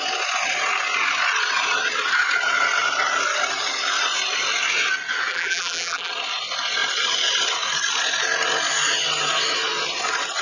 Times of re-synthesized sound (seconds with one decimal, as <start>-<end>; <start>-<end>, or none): 5.3-6.1